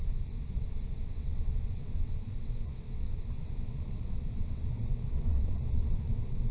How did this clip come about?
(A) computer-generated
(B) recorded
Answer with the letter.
A